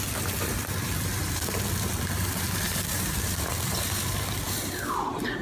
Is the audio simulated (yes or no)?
yes